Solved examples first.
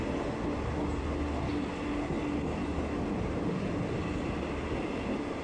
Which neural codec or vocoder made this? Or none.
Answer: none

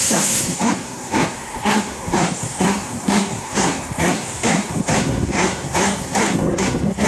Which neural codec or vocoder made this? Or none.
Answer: codec, SNAC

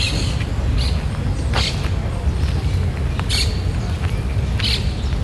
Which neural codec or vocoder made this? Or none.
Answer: none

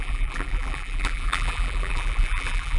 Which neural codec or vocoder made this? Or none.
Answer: vocoder, BigVGAN v2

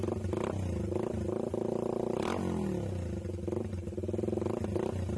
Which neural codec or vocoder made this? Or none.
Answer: none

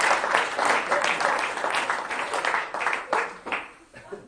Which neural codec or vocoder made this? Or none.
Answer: vocoder, BigVGAN v2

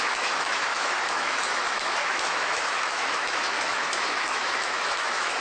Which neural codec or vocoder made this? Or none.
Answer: autoencoder, DAC-VAE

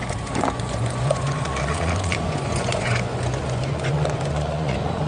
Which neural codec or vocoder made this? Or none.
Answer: vocoder, Vocos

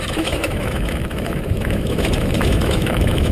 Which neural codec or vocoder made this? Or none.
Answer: autoencoder, DAC-VAE